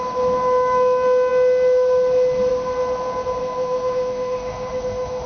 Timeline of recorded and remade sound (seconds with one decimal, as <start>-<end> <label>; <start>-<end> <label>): 0.0-3.4 recorded; 3.4-5.3 remade